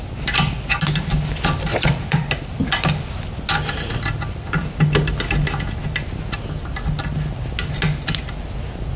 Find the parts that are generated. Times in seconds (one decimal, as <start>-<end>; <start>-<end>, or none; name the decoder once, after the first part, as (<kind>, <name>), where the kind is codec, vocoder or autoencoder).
1.7-2.3 (vocoder, Vocos)

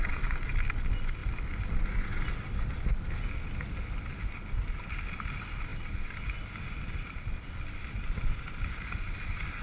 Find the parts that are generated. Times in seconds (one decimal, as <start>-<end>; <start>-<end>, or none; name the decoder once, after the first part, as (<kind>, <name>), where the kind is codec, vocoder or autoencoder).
none

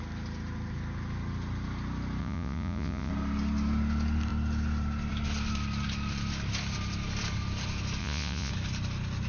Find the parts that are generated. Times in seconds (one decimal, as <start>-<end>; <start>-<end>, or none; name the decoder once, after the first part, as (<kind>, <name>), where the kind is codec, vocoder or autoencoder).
2.2-3.1 (vocoder, Vocos); 8.0-8.5

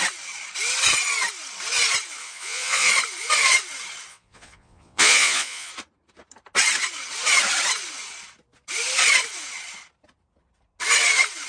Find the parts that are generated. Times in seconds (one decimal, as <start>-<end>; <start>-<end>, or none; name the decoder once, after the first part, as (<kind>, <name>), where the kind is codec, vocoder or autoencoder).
2.2-2.9 (vocoder, Vocos); 4.1-5.7